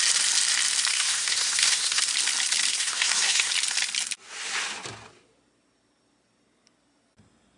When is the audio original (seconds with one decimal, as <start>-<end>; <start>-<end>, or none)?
0.0-0.9; 2.0-2.7; 3.5-7.6